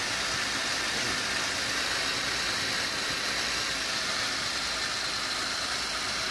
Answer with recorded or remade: recorded